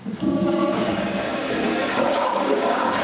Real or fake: fake